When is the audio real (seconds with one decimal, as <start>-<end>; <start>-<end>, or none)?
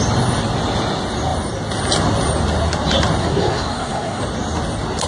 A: 0.0-3.2; 4.2-5.1